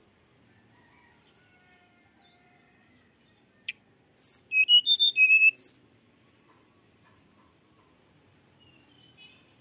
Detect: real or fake real